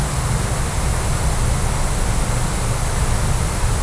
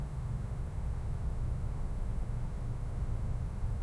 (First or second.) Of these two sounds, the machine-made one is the second